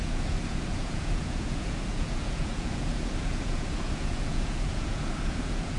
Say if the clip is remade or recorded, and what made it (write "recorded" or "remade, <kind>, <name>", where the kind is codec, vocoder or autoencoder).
remade, vocoder, Vocos